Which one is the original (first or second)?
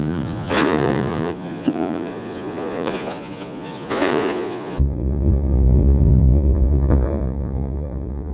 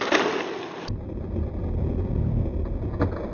second